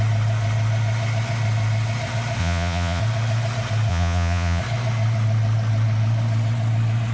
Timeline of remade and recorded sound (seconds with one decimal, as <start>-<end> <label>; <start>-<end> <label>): 0.0-2.4 recorded; 2.4-3.0 remade; 3.0-3.9 recorded; 3.9-4.6 remade; 4.6-7.1 recorded